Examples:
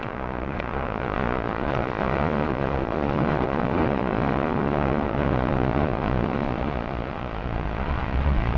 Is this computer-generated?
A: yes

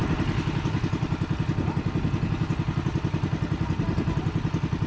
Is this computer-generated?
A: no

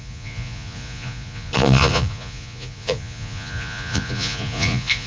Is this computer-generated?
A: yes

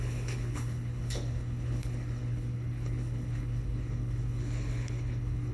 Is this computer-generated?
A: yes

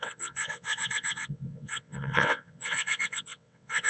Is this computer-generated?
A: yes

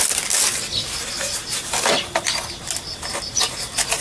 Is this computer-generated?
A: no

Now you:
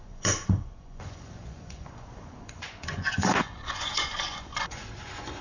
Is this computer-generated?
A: yes